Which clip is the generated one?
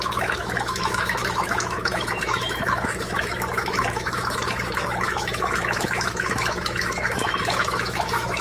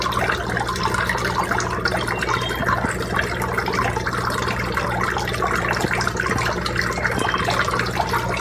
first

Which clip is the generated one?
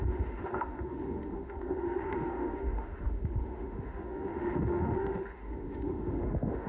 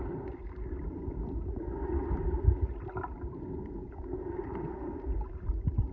first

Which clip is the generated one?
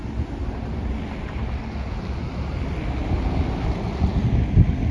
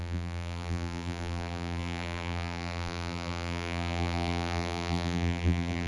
second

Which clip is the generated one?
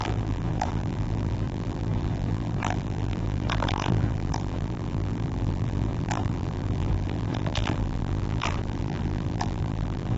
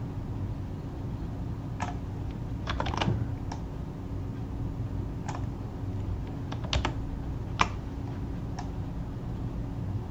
first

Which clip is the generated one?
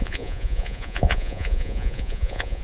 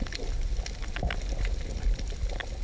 first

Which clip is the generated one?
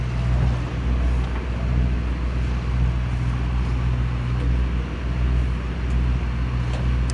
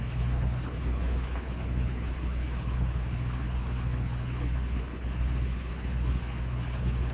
second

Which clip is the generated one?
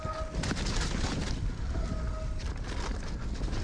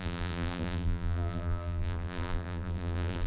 second